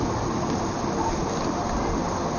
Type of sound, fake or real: real